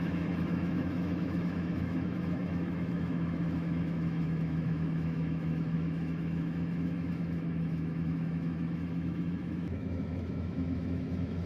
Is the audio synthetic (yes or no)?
yes